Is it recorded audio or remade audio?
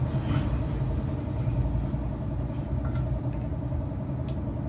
recorded